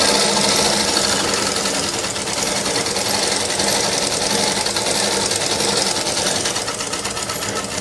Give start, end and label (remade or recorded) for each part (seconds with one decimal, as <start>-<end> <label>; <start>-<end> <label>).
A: 0.0-7.8 recorded